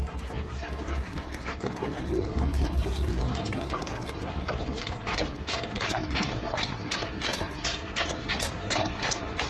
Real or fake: fake